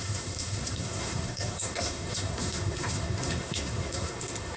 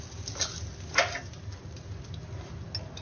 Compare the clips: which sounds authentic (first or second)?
second